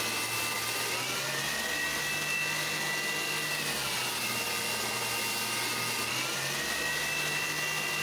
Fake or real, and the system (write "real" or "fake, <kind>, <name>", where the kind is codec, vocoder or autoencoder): real